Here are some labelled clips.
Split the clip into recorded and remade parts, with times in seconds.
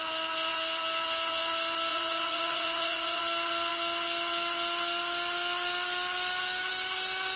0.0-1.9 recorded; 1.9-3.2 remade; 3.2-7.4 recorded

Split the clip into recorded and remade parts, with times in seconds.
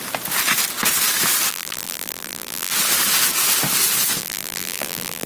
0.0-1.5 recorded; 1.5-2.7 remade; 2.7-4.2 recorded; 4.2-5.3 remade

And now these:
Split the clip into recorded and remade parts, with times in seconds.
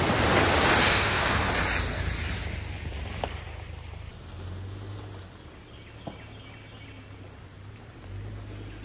0.0-0.9 recorded; 0.9-1.5 remade; 1.5-8.8 recorded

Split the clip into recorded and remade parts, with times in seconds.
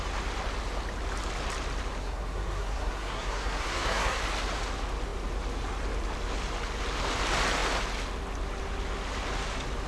0.0-2.0 recorded; 2.0-4.2 remade; 4.2-9.9 recorded